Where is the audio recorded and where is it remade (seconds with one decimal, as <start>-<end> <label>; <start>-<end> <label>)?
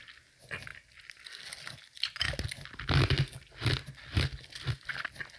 0.0-5.4 recorded